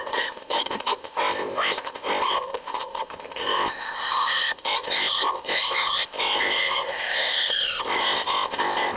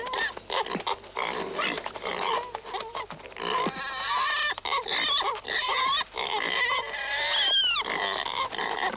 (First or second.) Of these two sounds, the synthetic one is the first